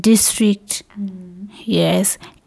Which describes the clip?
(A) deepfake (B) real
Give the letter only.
B